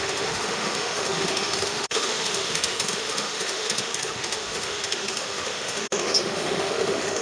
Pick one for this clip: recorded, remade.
remade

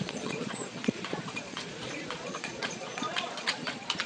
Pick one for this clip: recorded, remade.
remade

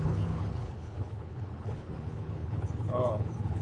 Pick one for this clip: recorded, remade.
remade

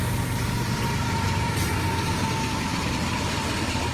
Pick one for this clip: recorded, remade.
recorded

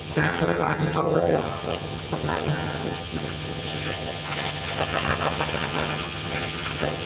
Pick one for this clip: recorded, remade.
remade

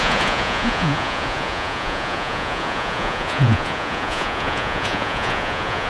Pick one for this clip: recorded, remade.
remade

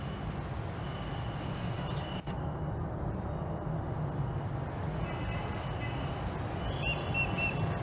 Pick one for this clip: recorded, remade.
recorded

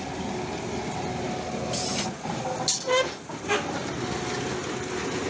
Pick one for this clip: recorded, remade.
recorded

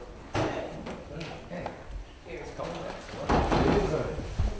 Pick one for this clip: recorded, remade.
recorded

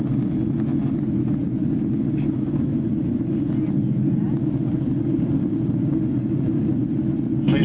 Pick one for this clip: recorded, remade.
recorded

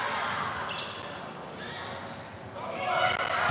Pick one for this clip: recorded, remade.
recorded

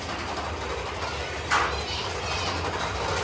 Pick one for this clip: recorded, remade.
recorded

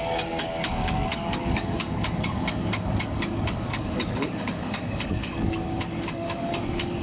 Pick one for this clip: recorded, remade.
remade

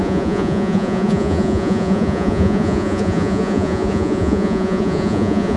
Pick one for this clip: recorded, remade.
remade